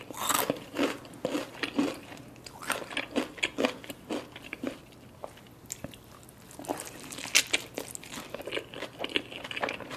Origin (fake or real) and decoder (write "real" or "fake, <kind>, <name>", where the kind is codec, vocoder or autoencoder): real